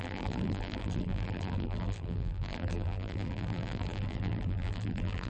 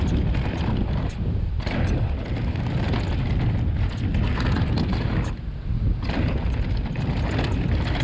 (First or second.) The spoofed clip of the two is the first